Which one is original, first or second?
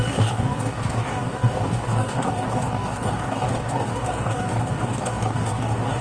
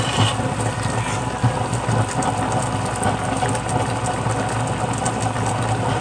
second